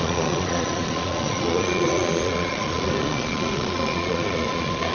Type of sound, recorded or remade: remade